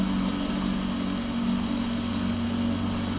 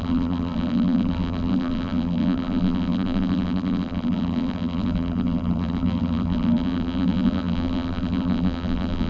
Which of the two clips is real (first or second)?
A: first